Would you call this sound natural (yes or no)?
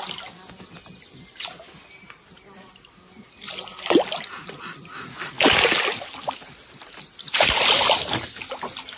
yes